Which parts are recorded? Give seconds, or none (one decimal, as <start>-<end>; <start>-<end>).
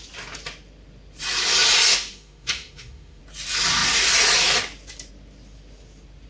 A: 0.0-1.9; 3.2-6.3